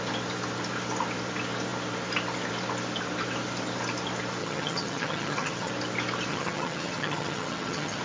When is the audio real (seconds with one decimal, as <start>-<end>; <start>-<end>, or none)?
0.0-4.4; 5.7-6.3